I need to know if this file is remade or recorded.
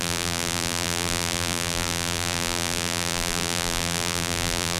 remade